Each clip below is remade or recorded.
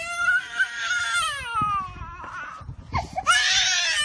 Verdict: recorded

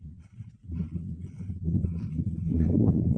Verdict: remade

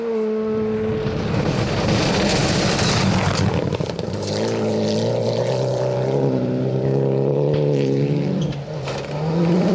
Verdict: recorded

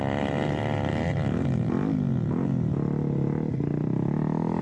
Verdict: recorded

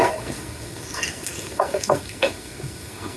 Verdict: remade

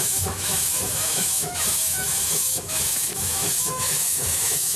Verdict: remade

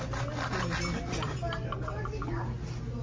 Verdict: recorded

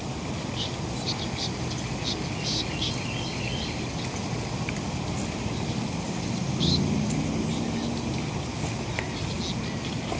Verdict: recorded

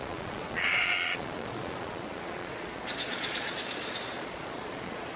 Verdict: remade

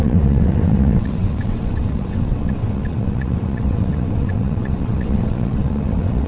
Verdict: remade